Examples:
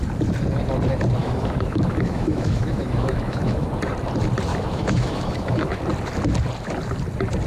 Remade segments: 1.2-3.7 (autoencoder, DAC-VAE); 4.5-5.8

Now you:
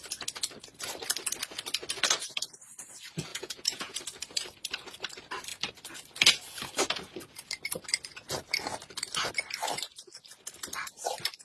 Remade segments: 3.3-4.0 (vocoder, Vocos)

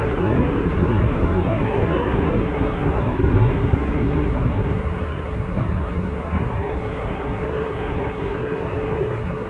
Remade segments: 0.0-9.5 (codec, SNAC)